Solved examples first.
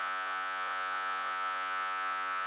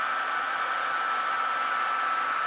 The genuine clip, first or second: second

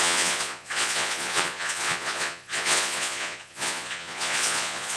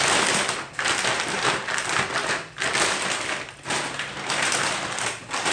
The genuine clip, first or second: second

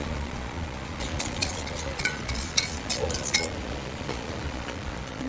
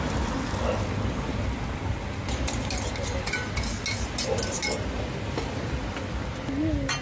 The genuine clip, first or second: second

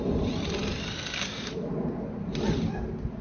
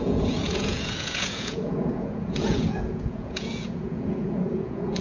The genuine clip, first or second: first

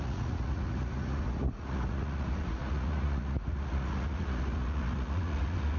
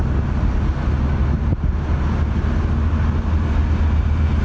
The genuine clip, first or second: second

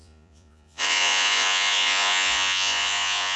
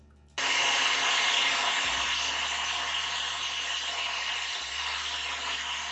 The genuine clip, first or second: second